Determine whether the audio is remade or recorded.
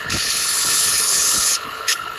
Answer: remade